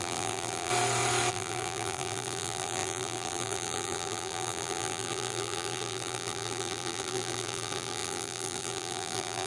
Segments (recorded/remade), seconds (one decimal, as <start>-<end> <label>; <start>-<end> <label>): 0.0-0.7 remade; 0.7-1.3 recorded; 1.3-9.5 remade